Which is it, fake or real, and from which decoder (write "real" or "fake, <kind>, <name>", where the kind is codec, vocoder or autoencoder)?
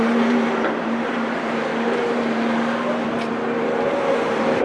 fake, vocoder, BigVGAN v2